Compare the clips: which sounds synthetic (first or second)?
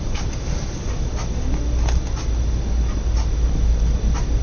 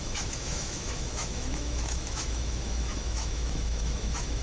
second